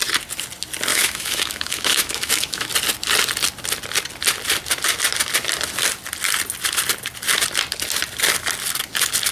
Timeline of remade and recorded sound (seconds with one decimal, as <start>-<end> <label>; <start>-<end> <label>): 0.0-0.9 recorded; 0.9-2.7 remade; 2.7-9.3 recorded